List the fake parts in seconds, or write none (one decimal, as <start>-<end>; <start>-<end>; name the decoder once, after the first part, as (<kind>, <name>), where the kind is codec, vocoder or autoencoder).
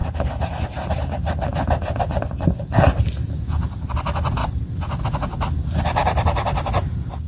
0.0-0.9 (vocoder, BigVGAN v2); 4.4-5.0